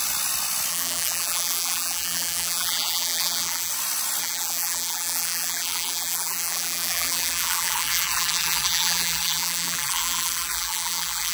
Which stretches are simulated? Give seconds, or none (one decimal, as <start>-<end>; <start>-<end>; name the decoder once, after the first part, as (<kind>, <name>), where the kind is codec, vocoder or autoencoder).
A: 0.7-3.7 (vocoder, BigVGAN v2); 4.2-11.3

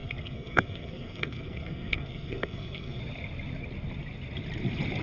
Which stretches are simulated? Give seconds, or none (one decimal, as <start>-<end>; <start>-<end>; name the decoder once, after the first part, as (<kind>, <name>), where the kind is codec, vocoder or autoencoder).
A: 0.0-3.0 (codec, SNAC)

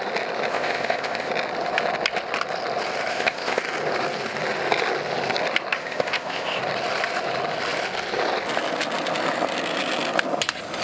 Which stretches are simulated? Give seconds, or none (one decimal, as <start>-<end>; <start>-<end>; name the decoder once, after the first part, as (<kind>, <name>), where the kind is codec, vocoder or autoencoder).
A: 0.5-1.3 (codec, ZipCodec); 3.1-3.6; 5.8-6.6

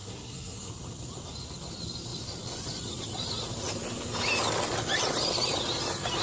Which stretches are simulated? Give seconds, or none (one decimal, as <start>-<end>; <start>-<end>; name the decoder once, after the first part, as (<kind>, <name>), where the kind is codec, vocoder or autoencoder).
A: 0.0-0.7 (codec, SNAC)

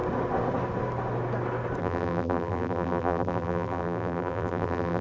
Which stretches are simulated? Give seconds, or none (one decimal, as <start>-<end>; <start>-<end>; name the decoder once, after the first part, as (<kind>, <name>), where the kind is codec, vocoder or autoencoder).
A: 1.8-5.0 (vocoder, BigVGAN v2)

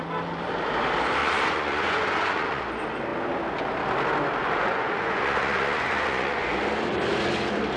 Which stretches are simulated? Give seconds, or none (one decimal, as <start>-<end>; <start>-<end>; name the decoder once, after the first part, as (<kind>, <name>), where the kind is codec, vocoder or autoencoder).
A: 1.2-2.6 (vocoder, Vocos); 4.4-6.5

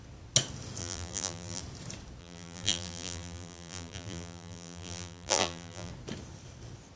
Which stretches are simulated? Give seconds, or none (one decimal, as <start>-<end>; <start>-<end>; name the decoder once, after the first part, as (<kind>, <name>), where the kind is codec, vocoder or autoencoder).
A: 0.8-1.6 (vocoder, BigVGAN v2); 2.2-5.9